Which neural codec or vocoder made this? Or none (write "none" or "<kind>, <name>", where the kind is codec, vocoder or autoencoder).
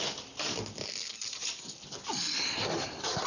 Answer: none